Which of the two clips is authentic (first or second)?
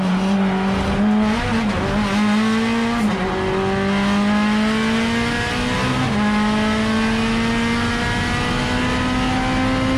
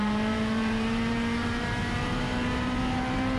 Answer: first